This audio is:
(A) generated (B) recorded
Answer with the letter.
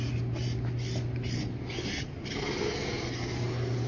B